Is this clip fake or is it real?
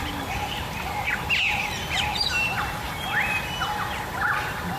real